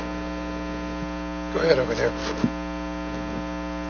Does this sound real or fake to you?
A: real